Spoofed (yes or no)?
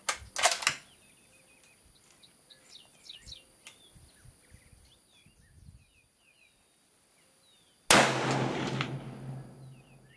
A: no